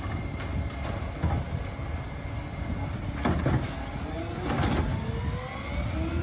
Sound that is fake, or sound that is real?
real